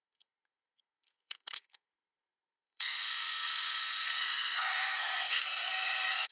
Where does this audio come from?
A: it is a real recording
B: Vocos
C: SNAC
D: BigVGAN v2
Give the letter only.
C